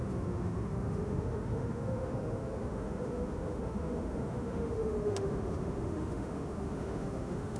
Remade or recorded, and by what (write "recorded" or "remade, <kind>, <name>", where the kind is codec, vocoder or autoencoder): remade, autoencoder, DAC-VAE